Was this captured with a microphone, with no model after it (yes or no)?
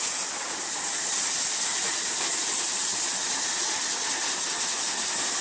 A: yes